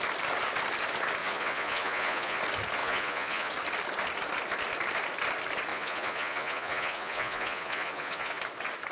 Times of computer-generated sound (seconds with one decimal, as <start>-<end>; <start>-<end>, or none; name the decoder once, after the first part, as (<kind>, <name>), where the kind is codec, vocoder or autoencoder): 1.2-2.4 (vocoder, Vocos); 2.8-3.5; 5.7-8.4